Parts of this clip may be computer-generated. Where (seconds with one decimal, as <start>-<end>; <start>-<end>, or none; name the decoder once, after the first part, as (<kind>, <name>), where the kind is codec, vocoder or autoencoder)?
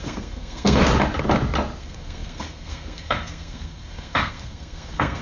0.0-0.8 (codec, SNAC); 1.8-5.2